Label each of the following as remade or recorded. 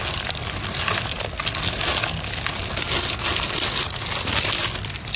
recorded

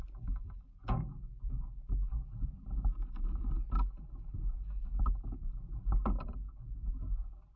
recorded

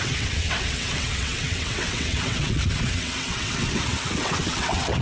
remade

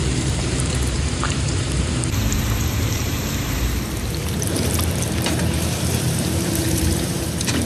remade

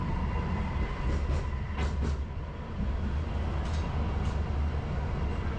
recorded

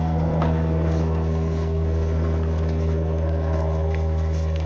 remade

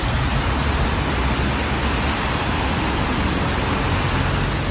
recorded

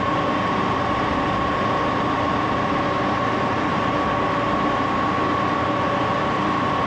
recorded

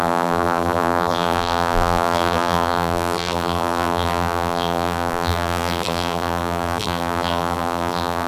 remade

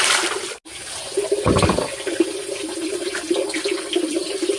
recorded